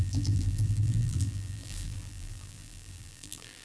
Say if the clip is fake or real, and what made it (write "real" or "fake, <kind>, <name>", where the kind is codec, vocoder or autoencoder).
fake, vocoder, BigVGAN v2